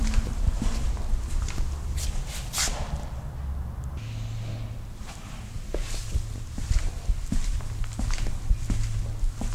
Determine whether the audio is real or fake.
real